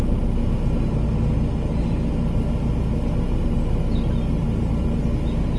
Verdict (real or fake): real